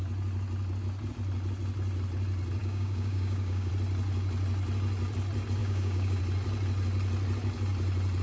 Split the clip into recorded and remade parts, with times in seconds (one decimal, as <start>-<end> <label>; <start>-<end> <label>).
0.0-2.6 recorded; 2.6-3.7 remade; 3.7-5.6 recorded; 5.6-6.2 remade; 6.2-8.2 recorded